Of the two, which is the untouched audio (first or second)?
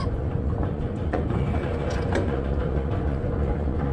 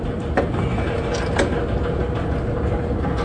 second